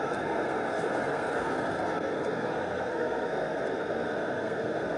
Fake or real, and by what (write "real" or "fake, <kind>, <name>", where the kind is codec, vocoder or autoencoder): fake, codec, SNAC